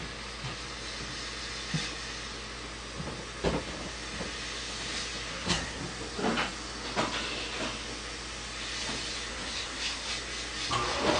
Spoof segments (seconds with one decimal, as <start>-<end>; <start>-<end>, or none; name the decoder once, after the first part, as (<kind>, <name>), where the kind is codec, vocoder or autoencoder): 5.3-5.8 (codec, SNAC); 9.3-10.1